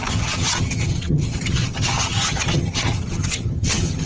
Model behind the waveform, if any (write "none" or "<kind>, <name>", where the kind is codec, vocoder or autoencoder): vocoder, HiFi-GAN